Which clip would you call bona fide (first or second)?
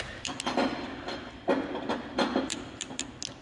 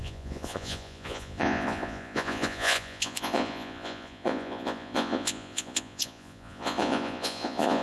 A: first